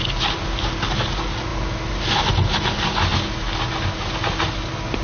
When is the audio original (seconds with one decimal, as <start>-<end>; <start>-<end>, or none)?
0.0-5.0